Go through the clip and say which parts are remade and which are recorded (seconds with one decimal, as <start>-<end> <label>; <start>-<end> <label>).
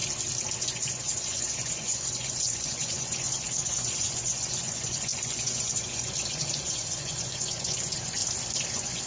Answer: 0.0-0.6 recorded; 0.6-8.2 remade; 8.2-8.7 recorded; 8.7-9.1 remade